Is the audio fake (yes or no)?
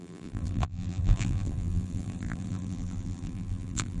yes